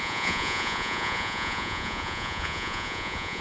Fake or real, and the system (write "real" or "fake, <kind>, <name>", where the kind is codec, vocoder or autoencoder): fake, vocoder, Vocos